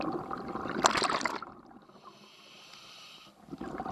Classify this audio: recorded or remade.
remade